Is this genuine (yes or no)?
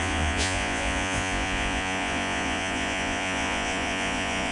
no